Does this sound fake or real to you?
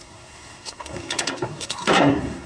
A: fake